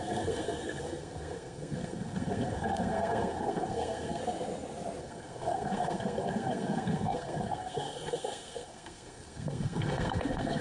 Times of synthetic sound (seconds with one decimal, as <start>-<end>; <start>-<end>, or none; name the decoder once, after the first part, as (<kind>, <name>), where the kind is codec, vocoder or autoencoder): 0.0-4.2 (codec, SNAC); 5.0-10.6